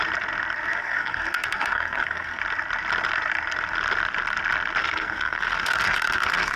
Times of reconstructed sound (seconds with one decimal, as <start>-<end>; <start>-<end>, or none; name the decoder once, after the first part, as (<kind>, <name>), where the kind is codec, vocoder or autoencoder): 0.7-2.4 (codec, SNAC); 4.8-6.6